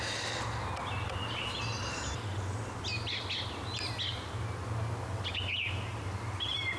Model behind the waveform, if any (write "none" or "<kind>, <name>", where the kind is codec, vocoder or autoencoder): none